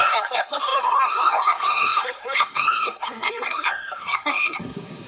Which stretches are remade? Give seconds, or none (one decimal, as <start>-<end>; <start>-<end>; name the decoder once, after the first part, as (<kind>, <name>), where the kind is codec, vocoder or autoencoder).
0.0-5.1 (codec, SNAC)